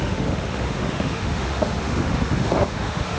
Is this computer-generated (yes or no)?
yes